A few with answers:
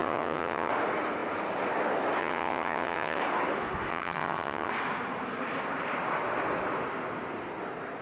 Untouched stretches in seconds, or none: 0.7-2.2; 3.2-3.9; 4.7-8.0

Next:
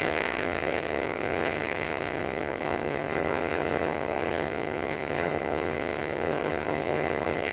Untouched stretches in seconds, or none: none

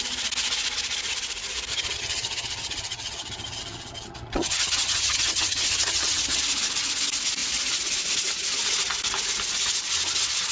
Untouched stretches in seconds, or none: 0.0-1.7; 6.4-10.5